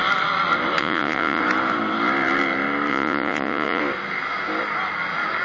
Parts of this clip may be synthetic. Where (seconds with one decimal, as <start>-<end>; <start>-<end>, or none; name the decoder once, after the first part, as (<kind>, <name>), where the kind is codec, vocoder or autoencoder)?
0.8-1.4 (vocoder, Vocos); 2.9-3.8